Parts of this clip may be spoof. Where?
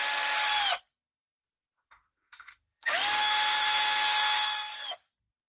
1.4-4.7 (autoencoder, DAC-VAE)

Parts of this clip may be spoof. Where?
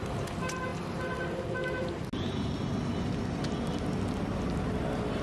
none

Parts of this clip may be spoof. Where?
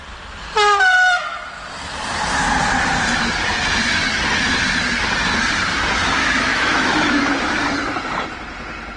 6.2-7.6 (autoencoder, DAC-VAE)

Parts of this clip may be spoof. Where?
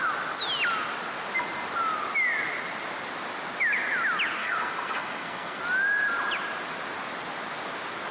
4.4-5.6 (codec, SNAC)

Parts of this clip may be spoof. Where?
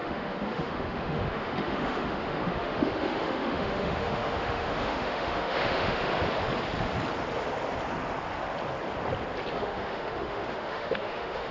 0.0-6.1 (autoencoder, DAC-VAE); 9.5-11.5